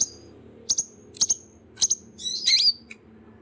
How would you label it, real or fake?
real